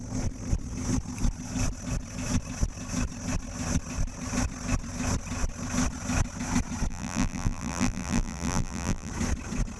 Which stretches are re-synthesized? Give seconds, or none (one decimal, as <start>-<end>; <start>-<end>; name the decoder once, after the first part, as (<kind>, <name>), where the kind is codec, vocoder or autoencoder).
6.9-9.1 (vocoder, BigVGAN v2)